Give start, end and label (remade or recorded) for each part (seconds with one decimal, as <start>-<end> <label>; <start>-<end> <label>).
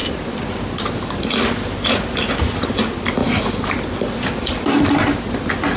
0.0-5.8 recorded